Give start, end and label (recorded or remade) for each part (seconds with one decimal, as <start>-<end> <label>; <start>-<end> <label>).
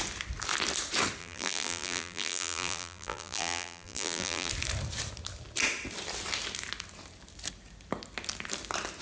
0.0-1.2 recorded; 1.2-4.5 remade; 4.5-9.0 recorded